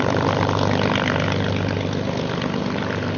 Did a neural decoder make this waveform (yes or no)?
no